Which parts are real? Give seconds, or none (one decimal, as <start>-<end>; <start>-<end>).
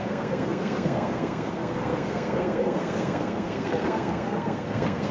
none